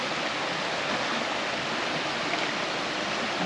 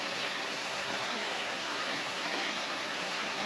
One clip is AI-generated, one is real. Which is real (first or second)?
first